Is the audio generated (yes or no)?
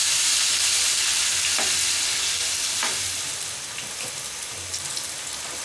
no